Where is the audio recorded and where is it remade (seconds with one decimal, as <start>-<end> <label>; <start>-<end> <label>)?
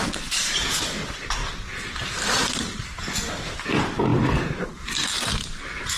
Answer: 0.0-1.4 remade; 1.4-3.4 recorded; 3.4-6.0 remade